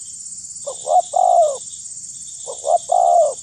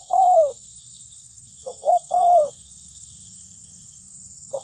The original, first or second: first